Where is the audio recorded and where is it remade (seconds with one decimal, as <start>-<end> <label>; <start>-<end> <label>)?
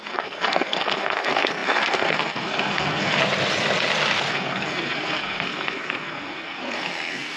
0.0-3.2 remade; 3.2-4.3 recorded; 4.3-7.4 remade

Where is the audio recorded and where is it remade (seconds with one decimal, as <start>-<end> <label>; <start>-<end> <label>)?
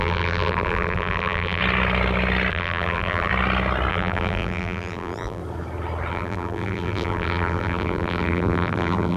0.0-1.6 remade; 1.6-2.5 recorded; 2.5-3.3 remade; 3.3-3.9 recorded; 3.9-5.4 remade; 5.4-6.1 recorded; 6.1-9.2 remade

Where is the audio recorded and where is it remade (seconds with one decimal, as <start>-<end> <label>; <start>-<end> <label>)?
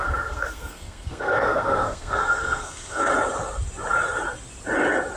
0.0-3.1 remade; 3.1-5.2 recorded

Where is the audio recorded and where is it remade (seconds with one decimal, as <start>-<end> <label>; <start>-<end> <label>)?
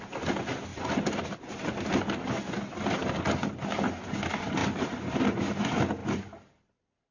0.0-0.7 recorded; 0.7-2.5 remade; 2.5-4.6 recorded; 4.6-5.2 remade; 5.2-6.0 recorded; 6.0-7.1 remade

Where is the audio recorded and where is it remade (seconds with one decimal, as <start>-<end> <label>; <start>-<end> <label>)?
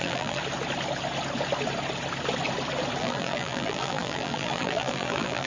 0.0-0.4 remade; 0.4-3.0 recorded; 3.0-5.5 remade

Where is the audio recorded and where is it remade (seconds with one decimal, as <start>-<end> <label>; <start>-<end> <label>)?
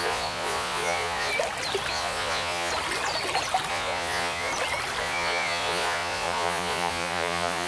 0.0-1.3 remade; 1.3-1.9 recorded; 1.9-2.7 remade; 2.7-3.7 recorded; 3.7-4.5 remade; 4.5-5.0 recorded; 5.0-7.7 remade